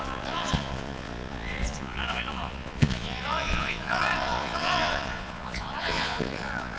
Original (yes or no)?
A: no